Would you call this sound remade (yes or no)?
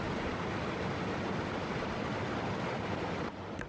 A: no